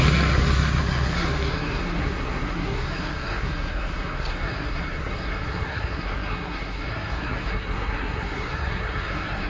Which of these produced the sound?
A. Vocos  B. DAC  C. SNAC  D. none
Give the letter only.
C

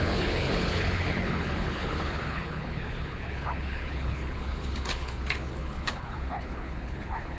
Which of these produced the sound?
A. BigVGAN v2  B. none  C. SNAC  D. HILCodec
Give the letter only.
D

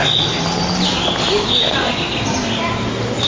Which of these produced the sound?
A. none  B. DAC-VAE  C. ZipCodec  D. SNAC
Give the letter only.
A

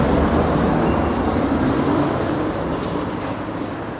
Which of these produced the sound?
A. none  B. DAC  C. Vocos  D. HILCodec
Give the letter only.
A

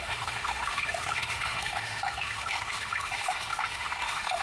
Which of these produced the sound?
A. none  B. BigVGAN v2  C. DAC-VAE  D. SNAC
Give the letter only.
C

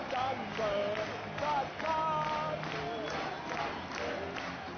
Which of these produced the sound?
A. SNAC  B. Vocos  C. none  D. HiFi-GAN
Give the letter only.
C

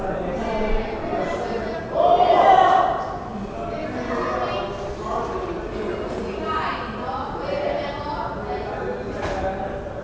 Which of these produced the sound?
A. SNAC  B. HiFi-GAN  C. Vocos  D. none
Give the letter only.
D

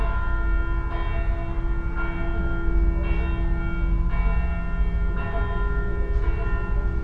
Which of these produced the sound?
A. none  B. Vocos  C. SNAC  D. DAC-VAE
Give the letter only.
A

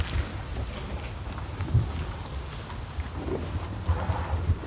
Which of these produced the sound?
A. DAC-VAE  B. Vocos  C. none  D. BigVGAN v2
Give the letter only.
C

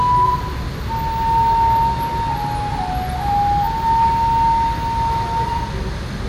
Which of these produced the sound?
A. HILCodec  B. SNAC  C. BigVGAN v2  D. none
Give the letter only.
D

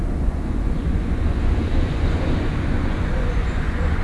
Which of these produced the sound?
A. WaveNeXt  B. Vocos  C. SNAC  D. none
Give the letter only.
B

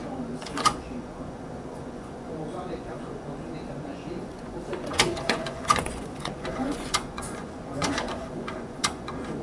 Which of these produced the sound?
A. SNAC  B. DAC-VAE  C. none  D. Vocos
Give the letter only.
D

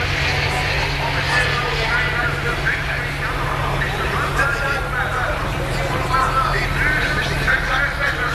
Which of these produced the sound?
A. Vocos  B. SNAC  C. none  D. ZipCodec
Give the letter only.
C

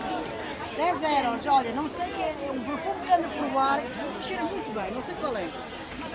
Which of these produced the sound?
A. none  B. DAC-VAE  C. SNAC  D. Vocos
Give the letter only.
A